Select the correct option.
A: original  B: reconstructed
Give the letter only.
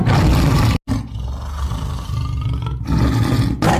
A